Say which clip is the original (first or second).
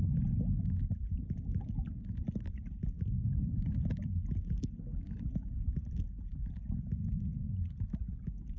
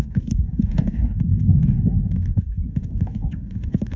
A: first